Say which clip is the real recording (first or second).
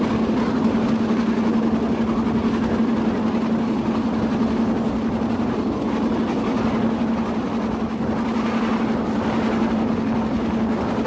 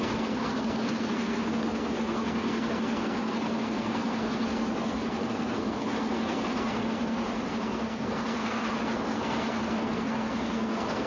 first